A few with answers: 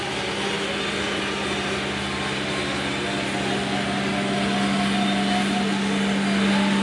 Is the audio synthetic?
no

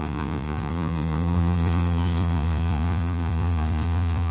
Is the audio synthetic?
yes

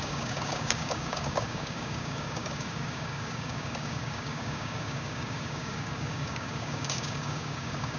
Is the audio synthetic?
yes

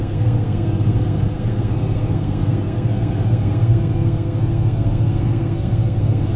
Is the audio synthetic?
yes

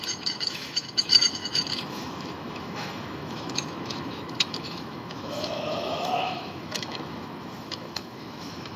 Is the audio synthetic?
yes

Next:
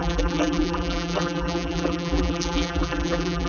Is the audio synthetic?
yes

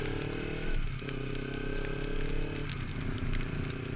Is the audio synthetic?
no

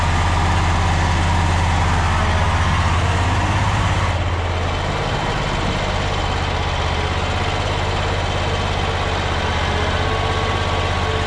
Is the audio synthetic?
no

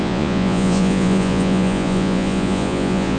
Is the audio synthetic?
yes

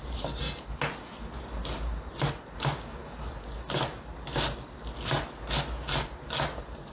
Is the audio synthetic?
no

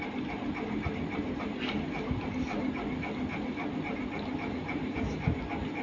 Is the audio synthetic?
no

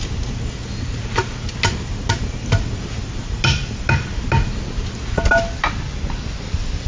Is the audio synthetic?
no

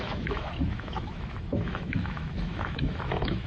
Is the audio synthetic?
yes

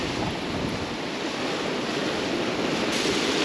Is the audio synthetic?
no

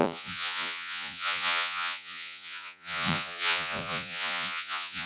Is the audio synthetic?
yes